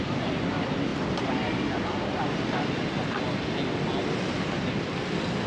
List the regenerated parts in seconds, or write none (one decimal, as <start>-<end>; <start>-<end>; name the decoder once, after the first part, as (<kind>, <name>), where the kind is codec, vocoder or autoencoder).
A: 0.0-0.9 (vocoder, BigVGAN v2); 4.2-5.5